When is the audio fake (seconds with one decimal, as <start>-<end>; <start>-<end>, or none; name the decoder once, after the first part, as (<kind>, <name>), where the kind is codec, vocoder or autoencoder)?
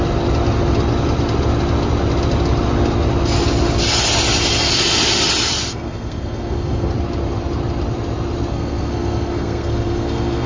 5.7-6.9 (codec, SNAC); 8.5-10.5